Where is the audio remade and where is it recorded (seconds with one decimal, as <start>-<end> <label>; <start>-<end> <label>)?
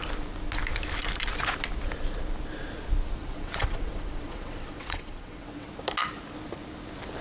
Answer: 0.0-3.2 recorded; 3.2-5.7 remade; 5.7-7.2 recorded